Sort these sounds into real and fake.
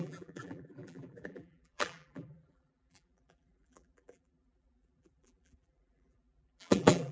fake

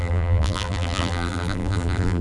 fake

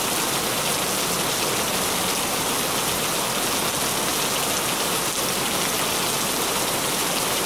real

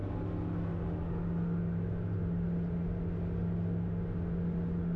real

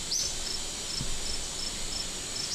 real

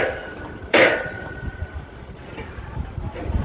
fake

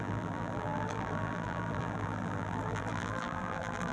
fake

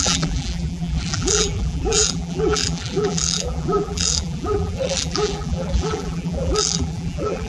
fake